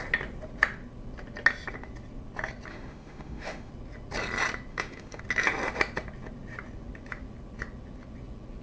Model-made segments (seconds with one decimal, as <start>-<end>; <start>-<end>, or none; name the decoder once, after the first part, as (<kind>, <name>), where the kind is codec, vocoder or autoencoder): 2.7-3.7 (autoencoder, DAC-VAE); 4.7-5.2